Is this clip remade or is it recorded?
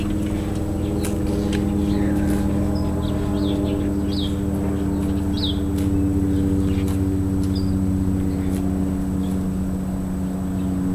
recorded